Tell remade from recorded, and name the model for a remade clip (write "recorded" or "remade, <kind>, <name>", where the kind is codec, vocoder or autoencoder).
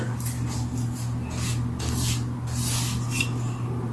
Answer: recorded